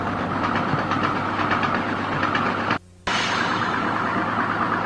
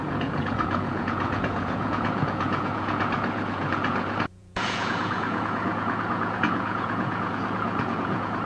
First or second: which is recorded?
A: first